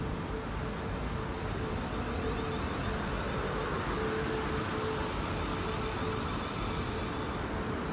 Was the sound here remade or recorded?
recorded